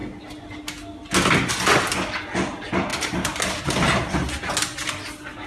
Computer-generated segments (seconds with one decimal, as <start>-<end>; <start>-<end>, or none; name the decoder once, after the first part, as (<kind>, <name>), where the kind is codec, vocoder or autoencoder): 2.9-3.4 (vocoder, BigVGAN v2)